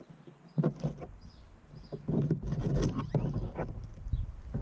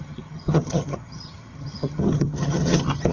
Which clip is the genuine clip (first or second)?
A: first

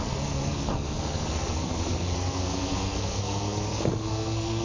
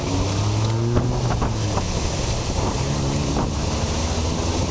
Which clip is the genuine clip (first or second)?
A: second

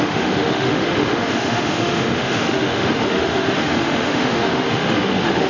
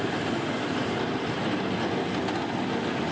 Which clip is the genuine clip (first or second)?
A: second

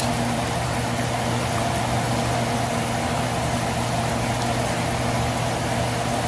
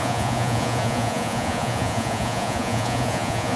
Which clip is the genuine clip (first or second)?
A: first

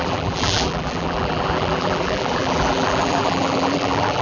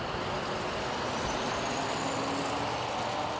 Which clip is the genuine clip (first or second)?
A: second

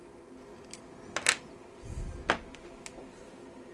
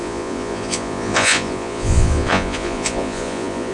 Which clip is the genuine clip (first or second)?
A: first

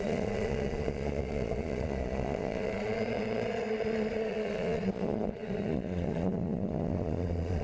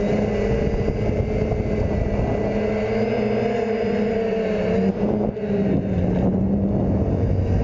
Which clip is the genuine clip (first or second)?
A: second